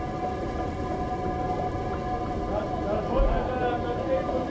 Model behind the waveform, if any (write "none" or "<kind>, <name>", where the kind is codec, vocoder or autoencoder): none